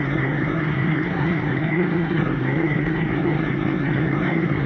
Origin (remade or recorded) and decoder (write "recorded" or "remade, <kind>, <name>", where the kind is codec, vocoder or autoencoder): remade, codec, SNAC